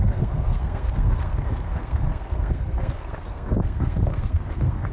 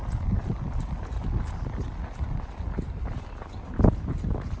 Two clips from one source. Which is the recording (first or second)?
second